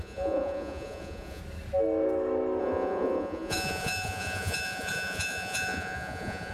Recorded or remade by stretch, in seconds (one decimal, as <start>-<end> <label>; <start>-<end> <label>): 0.0-1.4 remade; 1.4-2.6 recorded; 2.6-6.5 remade